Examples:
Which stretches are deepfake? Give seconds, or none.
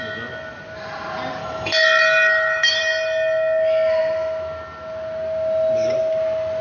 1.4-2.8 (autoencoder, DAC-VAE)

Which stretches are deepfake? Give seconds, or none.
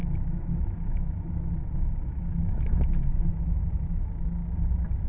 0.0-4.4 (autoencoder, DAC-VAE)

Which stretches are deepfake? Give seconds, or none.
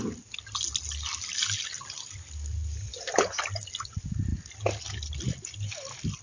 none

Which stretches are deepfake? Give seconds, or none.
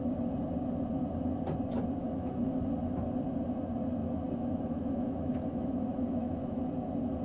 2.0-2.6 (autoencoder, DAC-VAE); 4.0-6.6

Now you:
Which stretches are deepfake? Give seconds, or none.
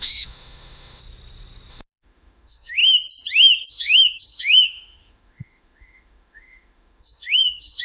0.0-1.0 (autoencoder, DAC-VAE); 1.7-2.8; 3.7-7.8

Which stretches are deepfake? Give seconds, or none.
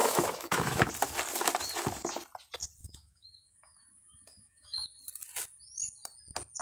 0.0-0.9 (autoencoder, DAC-VAE); 2.8-5.0